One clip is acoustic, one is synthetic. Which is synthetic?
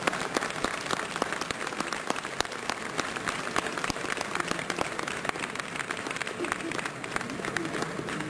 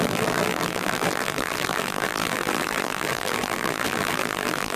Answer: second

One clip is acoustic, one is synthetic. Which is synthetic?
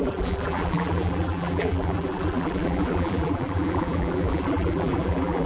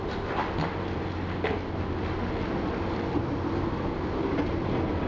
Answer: first